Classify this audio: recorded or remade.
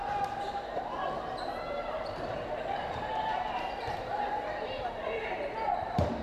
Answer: remade